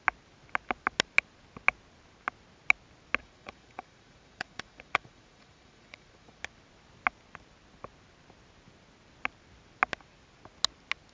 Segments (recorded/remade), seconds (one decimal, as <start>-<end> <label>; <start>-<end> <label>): 0.0-3.2 recorded; 3.2-6.4 remade; 6.4-11.1 recorded